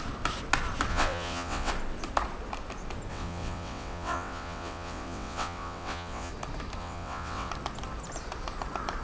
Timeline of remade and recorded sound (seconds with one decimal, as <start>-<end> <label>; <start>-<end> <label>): 0.0-0.9 recorded; 0.9-1.7 remade; 1.7-3.1 recorded; 3.1-6.3 remade; 6.3-6.8 recorded; 6.8-7.5 remade; 7.5-9.0 recorded